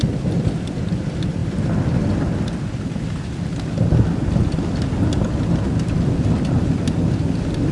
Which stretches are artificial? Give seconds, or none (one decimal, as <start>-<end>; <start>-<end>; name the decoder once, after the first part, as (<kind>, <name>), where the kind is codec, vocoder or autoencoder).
none